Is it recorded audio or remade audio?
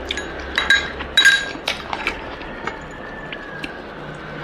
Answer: recorded